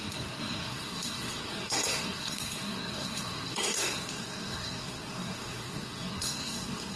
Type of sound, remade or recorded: remade